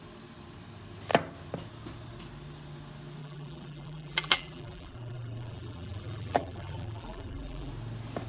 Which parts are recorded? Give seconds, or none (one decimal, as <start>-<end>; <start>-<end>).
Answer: 0.0-3.2; 7.7-8.3